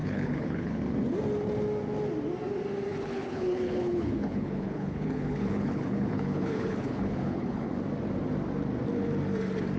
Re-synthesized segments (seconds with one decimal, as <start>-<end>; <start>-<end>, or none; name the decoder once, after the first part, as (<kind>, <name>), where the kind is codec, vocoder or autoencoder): 0.0-0.8 (codec, HILCodec); 2.9-7.7